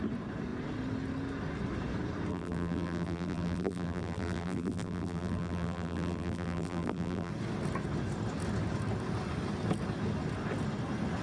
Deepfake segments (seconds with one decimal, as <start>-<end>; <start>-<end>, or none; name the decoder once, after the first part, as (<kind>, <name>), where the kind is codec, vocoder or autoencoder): 2.3-7.3 (vocoder, BigVGAN v2)